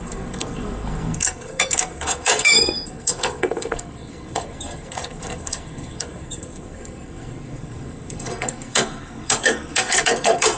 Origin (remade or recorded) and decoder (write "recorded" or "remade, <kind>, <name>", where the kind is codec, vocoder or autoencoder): remade, codec, SNAC